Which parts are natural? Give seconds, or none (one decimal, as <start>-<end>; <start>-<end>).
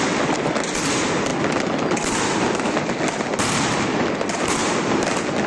0.0-5.5